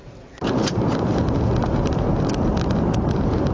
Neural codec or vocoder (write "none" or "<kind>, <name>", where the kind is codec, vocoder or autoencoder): none